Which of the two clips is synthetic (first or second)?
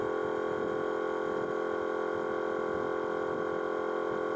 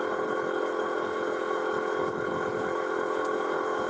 second